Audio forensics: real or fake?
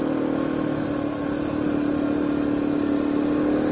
real